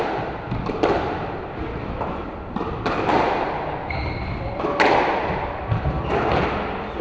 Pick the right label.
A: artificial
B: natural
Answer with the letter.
B